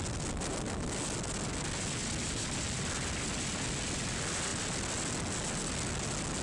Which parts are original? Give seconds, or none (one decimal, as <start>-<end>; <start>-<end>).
0.0-6.4